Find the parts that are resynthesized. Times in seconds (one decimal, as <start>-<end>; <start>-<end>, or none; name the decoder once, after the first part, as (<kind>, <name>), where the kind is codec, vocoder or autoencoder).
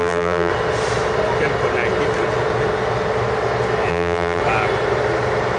0.0-0.5 (vocoder, BigVGAN v2); 3.9-4.4